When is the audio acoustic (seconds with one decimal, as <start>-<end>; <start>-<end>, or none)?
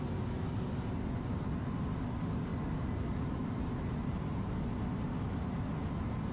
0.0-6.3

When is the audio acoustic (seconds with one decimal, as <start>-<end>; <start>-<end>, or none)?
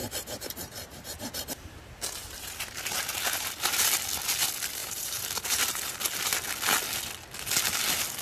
1.8-2.2; 3.7-4.8; 6.0-8.2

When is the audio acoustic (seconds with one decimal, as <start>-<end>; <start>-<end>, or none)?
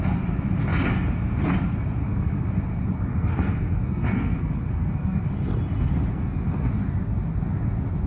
0.0-2.0; 2.5-3.1; 5.3-6.1; 6.7-8.1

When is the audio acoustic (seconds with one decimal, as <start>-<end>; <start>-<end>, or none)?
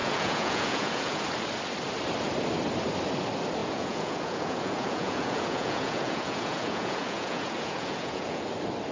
1.2-3.6; 8.5-8.9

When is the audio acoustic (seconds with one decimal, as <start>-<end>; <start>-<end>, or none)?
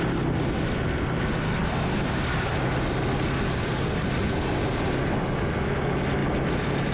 0.0-6.9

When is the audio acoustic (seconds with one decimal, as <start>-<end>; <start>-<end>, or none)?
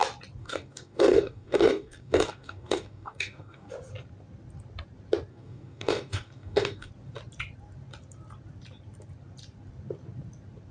0.0-0.4; 3.7-5.3; 6.9-10.7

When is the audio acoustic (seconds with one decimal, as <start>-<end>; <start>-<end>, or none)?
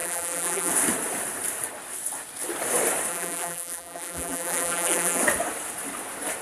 0.7-3.1; 5.2-6.4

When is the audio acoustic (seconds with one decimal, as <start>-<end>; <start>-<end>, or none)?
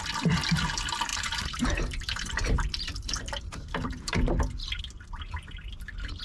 0.0-1.1; 4.8-6.2